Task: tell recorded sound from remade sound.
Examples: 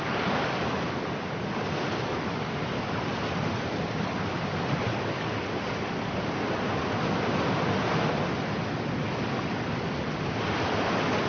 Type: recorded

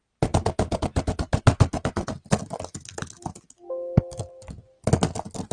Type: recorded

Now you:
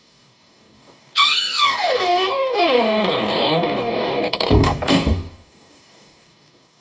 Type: remade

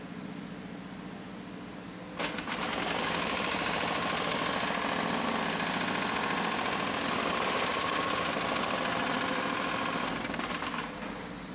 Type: recorded